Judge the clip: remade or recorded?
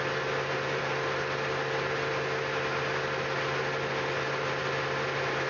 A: recorded